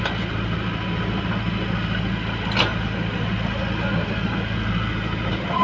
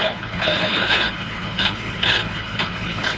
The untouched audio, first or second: first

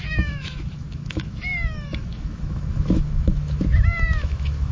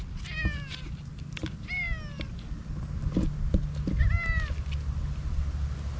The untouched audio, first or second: second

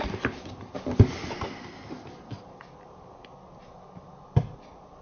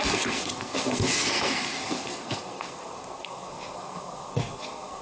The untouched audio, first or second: first